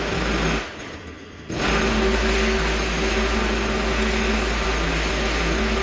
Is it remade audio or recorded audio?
recorded